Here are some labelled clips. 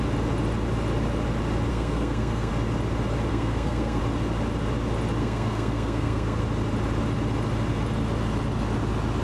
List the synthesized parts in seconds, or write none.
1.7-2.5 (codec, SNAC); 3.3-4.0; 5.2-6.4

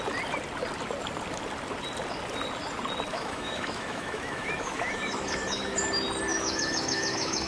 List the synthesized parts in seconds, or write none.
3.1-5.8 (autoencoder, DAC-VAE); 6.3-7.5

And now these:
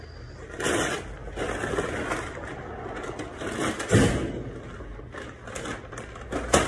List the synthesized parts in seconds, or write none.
0.0-1.2 (vocoder, BigVGAN v2); 5.2-6.7

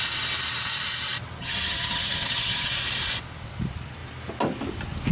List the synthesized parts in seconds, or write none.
1.4-2.7 (vocoder, HiFi-GAN)

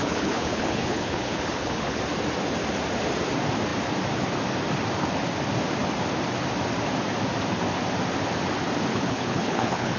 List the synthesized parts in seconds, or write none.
0.0-2.0 (codec, HILCodec); 8.9-10.0

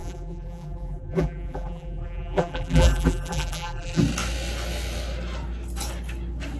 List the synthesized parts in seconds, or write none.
0.0-4.0 (vocoder, BigVGAN v2)

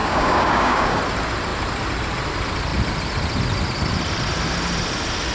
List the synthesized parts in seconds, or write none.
0.0-1.0 (codec, DAC)